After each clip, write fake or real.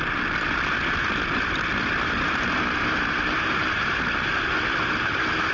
real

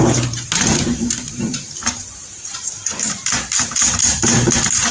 fake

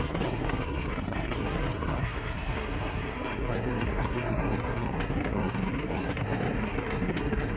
fake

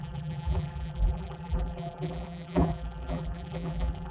fake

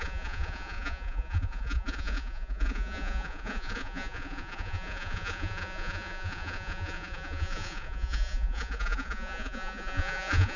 fake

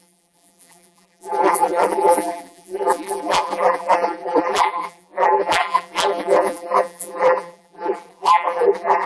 fake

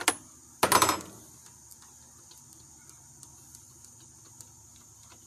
real